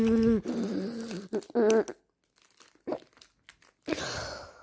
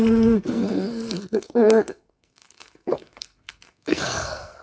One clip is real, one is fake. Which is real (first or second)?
first